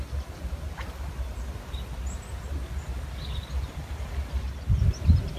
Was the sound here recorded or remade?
recorded